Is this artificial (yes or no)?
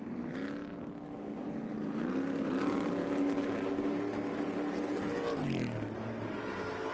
no